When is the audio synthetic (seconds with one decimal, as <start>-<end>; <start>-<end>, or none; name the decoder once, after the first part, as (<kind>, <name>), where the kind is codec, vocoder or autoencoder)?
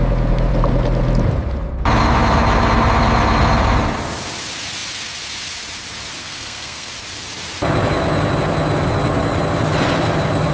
6.2-6.9 (codec, SNAC)